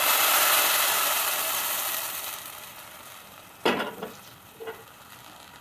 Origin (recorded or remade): remade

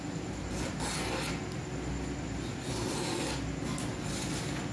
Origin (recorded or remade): recorded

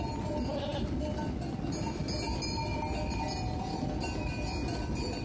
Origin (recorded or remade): recorded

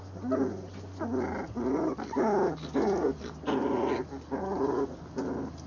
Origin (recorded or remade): recorded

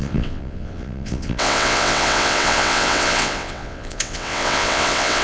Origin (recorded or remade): remade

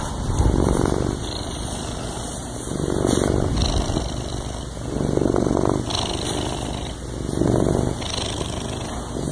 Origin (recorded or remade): recorded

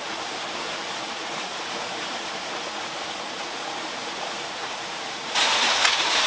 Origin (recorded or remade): remade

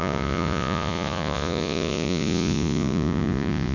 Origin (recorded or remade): remade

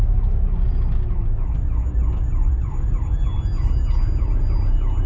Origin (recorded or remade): recorded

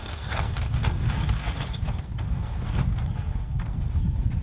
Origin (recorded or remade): remade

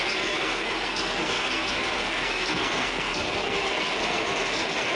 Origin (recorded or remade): remade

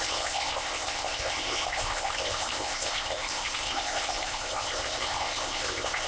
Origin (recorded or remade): remade